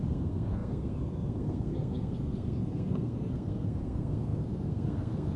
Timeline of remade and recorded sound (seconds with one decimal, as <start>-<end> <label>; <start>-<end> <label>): 0.0-5.4 remade

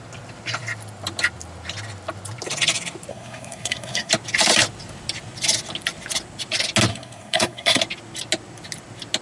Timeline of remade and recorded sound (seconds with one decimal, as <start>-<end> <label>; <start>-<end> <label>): 0.0-3.1 recorded; 3.1-4.1 remade; 4.1-6.9 recorded; 6.9-7.8 remade; 7.8-9.2 recorded